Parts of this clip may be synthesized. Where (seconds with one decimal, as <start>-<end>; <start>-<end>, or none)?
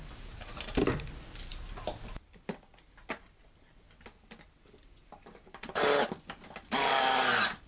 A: none